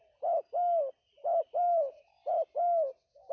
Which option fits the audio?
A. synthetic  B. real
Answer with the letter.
B